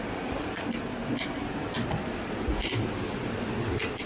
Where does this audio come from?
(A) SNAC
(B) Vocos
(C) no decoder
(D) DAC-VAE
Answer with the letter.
C